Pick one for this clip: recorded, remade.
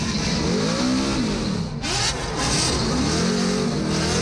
recorded